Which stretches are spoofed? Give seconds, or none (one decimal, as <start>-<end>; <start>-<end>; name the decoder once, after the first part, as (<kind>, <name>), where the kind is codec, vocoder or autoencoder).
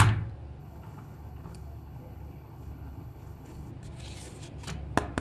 0.6-3.7 (codec, HILCodec)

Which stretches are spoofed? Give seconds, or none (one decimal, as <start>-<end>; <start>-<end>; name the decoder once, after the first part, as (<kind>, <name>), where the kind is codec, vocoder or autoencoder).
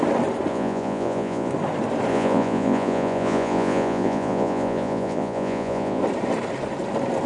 0.5-1.5 (vocoder, Vocos); 2.1-6.0